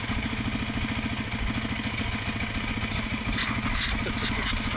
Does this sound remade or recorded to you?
recorded